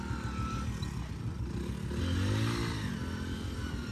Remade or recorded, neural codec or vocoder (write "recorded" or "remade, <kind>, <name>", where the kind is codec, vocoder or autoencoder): recorded